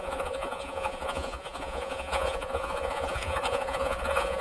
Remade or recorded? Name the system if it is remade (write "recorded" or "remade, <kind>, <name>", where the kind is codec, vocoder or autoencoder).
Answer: remade, vocoder, Vocos